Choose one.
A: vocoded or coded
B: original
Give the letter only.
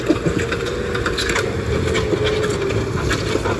B